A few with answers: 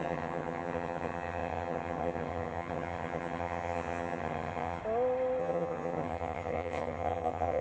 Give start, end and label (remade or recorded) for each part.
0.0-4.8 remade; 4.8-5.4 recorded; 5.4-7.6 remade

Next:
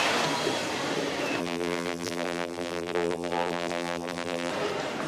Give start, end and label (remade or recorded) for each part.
0.0-1.4 recorded; 1.4-4.5 remade; 4.5-5.1 recorded

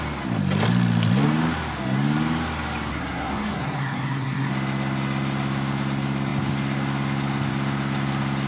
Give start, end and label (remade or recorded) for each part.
0.0-2.9 recorded; 2.9-4.5 remade; 4.5-8.5 recorded

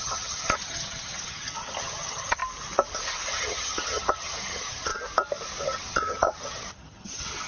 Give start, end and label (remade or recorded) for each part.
0.0-2.4 remade; 2.4-3.3 recorded; 3.3-4.9 remade; 4.9-5.6 recorded; 5.6-7.5 remade

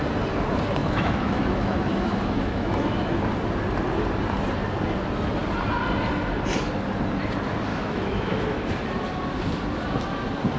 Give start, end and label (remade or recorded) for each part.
0.0-0.8 recorded; 0.8-3.2 remade; 3.2-7.7 recorded; 7.7-8.7 remade; 8.7-10.6 recorded

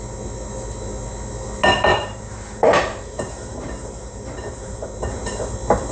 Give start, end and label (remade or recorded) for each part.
0.0-1.9 recorded; 1.9-5.4 remade; 5.4-5.9 recorded

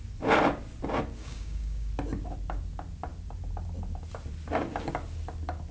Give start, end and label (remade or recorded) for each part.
0.0-1.2 recorded; 1.2-1.9 remade; 1.9-5.7 recorded

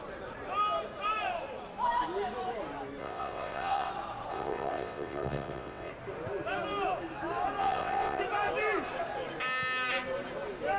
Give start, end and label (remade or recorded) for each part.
0.0-3.0 recorded; 3.0-3.9 remade; 3.9-4.3 recorded; 4.3-5.9 remade; 5.9-7.6 recorded; 7.6-8.2 remade; 8.2-10.8 recorded